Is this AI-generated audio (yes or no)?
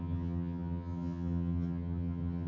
yes